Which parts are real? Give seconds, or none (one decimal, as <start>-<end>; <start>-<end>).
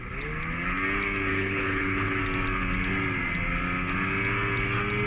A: 0.0-1.3; 2.2-5.1